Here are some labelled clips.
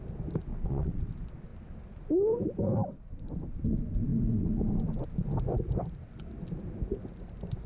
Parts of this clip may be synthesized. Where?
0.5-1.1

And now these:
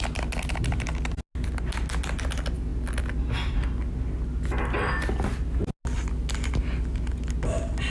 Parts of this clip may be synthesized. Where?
none

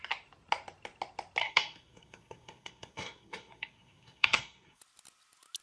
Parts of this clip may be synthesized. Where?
1.4-4.8

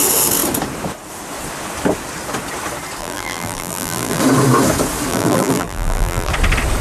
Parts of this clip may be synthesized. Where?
3.0-4.2; 5.1-6.3

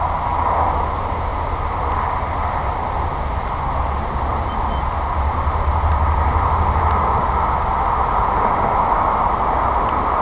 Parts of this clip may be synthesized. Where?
none

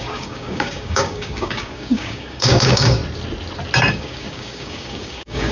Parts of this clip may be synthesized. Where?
0.0-3.0; 3.9-5.5

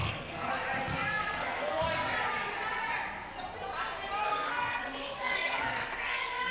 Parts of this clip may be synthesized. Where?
0.0-0.5; 1.2-1.8; 4.2-6.5

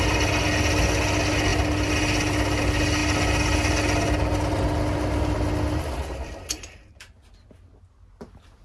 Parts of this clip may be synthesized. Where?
none